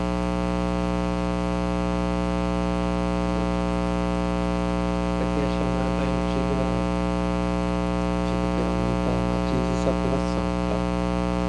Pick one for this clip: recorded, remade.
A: recorded